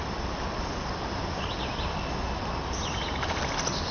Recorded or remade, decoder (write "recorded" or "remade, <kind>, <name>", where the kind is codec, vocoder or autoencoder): recorded